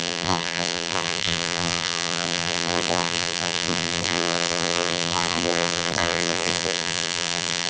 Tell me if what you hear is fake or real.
fake